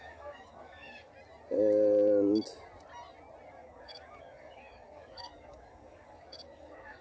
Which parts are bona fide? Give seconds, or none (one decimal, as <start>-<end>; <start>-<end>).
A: 1.1-3.5